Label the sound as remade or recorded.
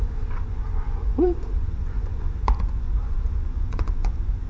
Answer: remade